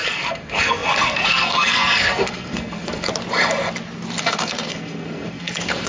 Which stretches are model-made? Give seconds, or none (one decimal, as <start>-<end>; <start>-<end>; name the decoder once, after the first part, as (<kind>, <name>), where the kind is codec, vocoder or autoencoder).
0.0-3.1 (codec, SNAC); 4.2-5.9